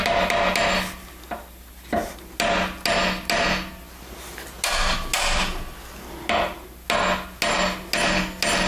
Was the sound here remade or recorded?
recorded